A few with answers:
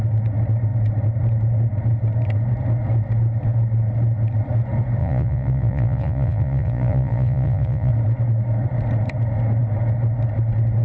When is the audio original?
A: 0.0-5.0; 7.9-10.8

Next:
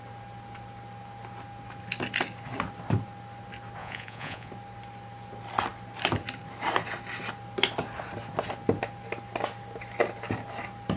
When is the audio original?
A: 0.0-3.8; 4.5-11.0

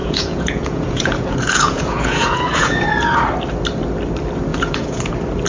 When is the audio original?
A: 3.3-4.5; 5.1-5.5